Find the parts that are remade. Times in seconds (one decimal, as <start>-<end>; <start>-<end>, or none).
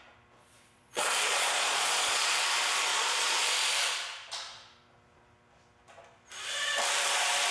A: 0.4-2.4; 2.9-3.5